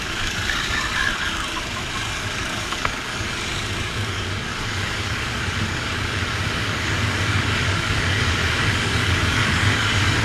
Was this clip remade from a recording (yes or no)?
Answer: yes